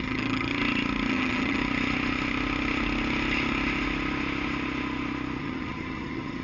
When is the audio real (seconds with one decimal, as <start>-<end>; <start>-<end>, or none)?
0.5-1.1; 1.6-5.4